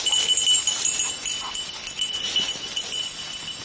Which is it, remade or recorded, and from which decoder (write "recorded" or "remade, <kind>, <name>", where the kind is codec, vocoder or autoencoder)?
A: recorded